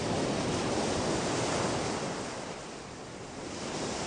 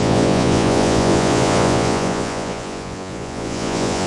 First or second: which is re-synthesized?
second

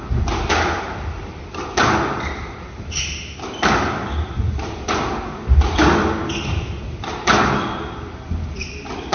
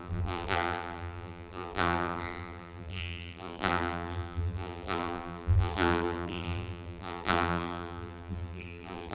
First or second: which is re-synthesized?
second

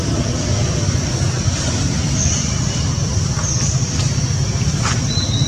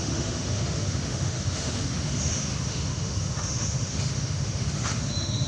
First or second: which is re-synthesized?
second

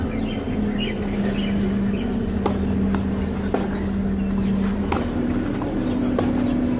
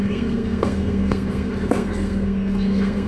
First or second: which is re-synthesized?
second